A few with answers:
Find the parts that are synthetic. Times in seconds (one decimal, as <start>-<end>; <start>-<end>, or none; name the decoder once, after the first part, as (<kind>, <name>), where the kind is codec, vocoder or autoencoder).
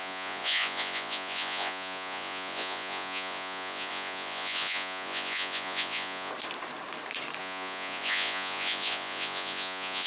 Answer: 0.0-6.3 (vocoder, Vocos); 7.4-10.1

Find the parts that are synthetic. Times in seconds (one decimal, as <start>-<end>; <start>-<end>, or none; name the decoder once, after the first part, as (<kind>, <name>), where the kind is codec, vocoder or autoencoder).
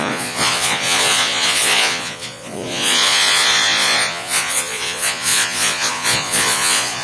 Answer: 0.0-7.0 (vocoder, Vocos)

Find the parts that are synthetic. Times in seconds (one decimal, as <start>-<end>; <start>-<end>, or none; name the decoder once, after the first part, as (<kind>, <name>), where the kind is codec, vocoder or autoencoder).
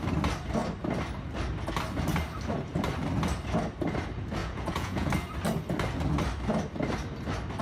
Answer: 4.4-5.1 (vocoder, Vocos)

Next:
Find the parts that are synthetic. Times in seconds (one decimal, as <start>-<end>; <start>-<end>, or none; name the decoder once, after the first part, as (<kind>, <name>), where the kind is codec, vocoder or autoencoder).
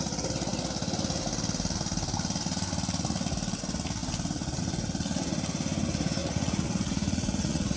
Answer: 6.2-7.8 (vocoder, Vocos)